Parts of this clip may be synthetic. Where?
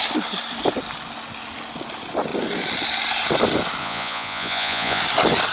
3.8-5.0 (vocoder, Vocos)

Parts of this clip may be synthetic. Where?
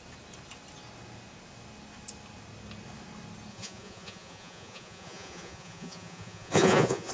3.5-7.1 (vocoder, Vocos)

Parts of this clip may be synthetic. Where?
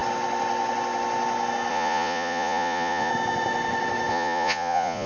1.7-3.1 (vocoder, Vocos); 4.1-5.1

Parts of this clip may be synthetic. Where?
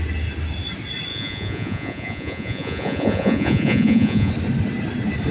1.1-4.3 (vocoder, Vocos)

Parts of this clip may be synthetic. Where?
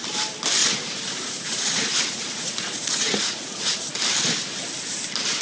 0.6-3.8 (vocoder, Vocos)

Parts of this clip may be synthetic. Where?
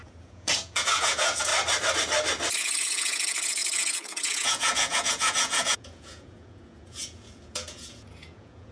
0.0-1.5 (vocoder, Vocos); 2.5-8.7